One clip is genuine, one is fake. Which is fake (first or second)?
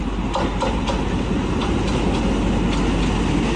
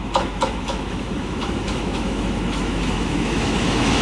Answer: second